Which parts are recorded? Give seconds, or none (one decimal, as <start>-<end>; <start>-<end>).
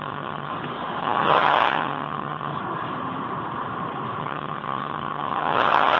0.5-1.0; 2.5-4.2